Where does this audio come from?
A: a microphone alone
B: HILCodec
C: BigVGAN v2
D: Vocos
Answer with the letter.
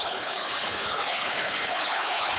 B